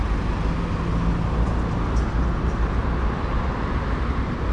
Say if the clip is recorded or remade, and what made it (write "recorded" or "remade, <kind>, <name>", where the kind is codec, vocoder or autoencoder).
recorded